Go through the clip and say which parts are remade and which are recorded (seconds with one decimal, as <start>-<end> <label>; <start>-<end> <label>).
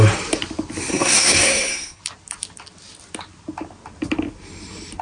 0.0-0.9 recorded; 0.9-2.0 remade; 2.0-5.0 recorded